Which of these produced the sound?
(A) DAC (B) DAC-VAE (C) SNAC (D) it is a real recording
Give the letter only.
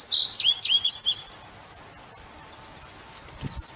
D